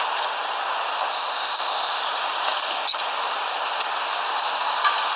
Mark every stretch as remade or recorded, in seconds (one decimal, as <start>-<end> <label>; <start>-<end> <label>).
0.0-1.1 recorded; 1.1-2.0 remade; 2.0-5.2 recorded